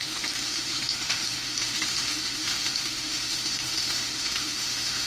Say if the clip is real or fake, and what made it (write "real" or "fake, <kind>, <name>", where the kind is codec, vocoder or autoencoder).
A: fake, autoencoder, DAC-VAE